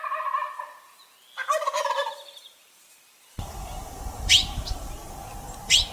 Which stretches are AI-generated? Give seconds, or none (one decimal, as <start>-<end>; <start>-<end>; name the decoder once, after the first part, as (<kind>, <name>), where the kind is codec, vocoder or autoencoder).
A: 1.4-4.9 (vocoder, BigVGAN v2)